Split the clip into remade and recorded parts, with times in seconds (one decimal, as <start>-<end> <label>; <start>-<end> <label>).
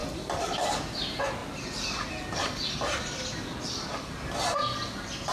0.0-0.9 remade; 0.9-1.4 recorded; 1.4-4.3 remade; 4.3-5.3 recorded